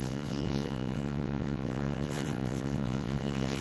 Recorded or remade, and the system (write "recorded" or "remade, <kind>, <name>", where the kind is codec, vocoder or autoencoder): remade, vocoder, WaveNeXt